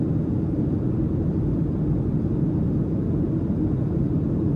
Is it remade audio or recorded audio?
recorded